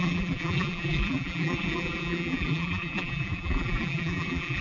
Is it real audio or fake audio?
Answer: fake